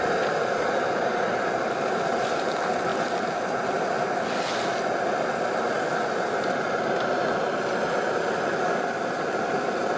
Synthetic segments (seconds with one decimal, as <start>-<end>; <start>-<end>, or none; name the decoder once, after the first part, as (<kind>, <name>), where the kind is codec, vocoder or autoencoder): none